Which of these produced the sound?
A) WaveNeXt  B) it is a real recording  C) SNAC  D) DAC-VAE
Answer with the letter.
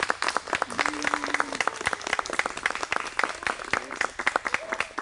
B